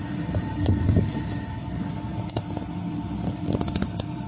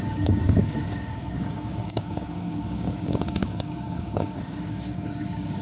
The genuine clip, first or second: first